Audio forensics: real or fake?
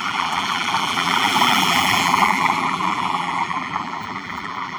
fake